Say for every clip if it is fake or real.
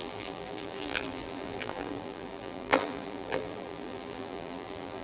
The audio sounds fake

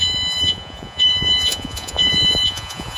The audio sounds fake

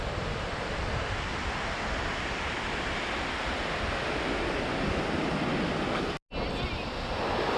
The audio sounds real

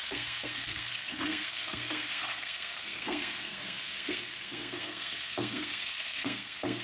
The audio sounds fake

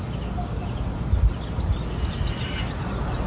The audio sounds real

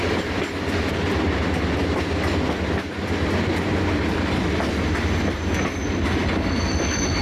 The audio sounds real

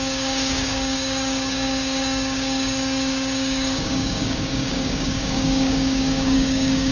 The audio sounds fake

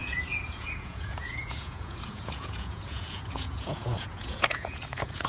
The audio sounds fake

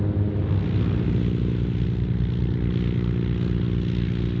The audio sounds real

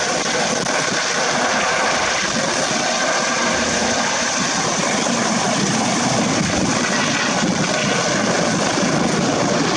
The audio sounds real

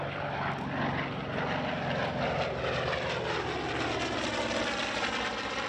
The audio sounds real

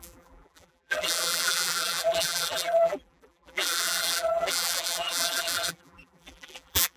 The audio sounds fake